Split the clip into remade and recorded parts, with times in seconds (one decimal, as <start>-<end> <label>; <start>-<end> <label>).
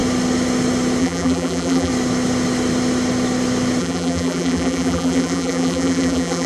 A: 0.0-1.0 recorded; 1.0-1.9 remade; 1.9-3.8 recorded; 3.8-6.5 remade